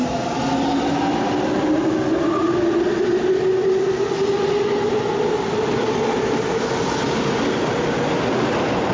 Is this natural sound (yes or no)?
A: yes